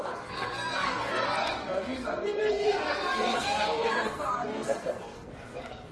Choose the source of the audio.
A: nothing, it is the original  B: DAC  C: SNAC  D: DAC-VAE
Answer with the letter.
C